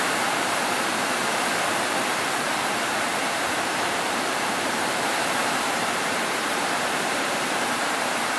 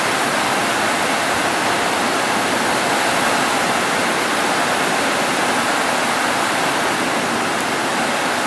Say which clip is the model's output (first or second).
first